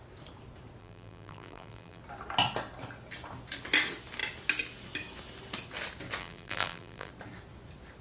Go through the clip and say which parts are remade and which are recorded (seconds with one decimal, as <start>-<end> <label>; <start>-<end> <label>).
0.0-0.8 recorded; 0.8-2.0 remade; 2.0-6.2 recorded; 6.2-7.1 remade; 7.1-8.0 recorded